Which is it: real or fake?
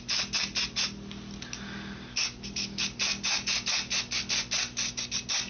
real